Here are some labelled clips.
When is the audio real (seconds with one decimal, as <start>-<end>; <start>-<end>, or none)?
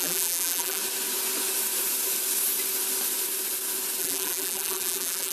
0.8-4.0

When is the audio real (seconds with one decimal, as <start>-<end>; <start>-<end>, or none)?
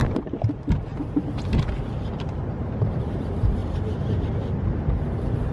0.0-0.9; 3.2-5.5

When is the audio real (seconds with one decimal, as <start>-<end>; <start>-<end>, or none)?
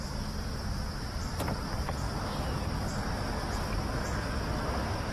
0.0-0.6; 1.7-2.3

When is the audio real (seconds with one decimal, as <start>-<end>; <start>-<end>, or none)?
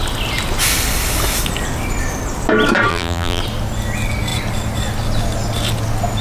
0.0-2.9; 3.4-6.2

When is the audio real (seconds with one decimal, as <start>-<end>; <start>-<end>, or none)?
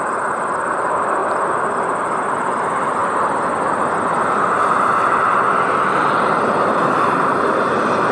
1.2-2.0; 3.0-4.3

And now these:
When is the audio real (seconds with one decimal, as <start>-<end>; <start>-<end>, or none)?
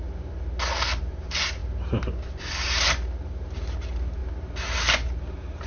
0.0-1.0; 4.2-4.8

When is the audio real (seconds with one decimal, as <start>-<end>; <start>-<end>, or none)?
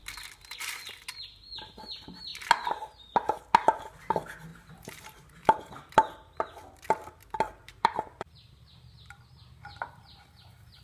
0.0-4.5; 5.9-7.6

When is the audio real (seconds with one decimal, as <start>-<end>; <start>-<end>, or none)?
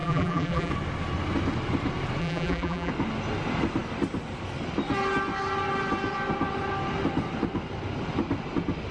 0.7-2.2; 2.9-8.9